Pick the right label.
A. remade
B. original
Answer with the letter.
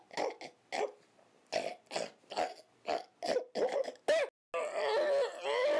B